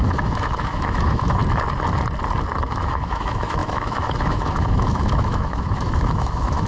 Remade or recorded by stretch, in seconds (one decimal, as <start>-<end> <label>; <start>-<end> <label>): 0.0-1.4 remade; 1.4-2.7 recorded; 2.7-6.7 remade